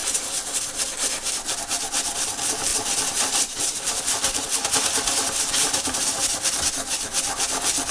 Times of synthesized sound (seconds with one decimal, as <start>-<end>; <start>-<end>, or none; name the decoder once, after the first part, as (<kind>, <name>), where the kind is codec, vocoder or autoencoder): 2.7-6.6 (vocoder, BigVGAN v2)